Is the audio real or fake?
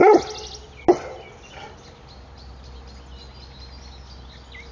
real